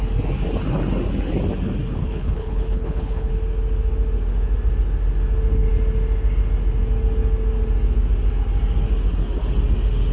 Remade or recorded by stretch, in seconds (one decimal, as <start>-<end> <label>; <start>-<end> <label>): 0.0-2.0 recorded; 2.0-3.3 remade; 3.3-10.1 recorded

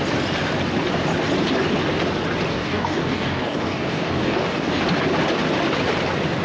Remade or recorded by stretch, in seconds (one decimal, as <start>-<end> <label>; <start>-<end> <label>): 0.0-2.5 recorded; 2.5-4.8 remade; 4.8-6.4 recorded

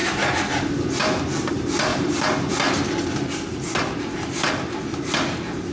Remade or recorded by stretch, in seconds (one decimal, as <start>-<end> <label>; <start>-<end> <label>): 0.0-1.9 recorded; 1.9-2.5 remade; 2.5-5.7 recorded

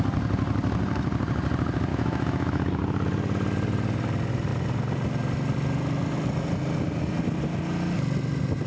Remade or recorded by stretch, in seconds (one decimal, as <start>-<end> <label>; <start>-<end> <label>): 0.0-1.9 recorded; 1.9-2.8 remade; 2.8-8.7 recorded

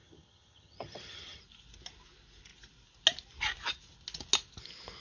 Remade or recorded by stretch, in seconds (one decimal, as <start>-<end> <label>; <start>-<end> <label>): 0.0-1.4 remade; 1.4-5.0 recorded

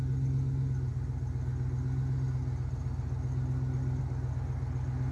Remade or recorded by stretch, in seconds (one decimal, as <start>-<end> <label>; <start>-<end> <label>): 0.0-5.1 recorded